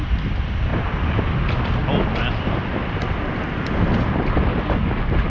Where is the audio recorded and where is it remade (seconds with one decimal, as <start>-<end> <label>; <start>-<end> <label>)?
0.0-0.7 recorded; 0.7-1.2 remade; 1.2-5.3 recorded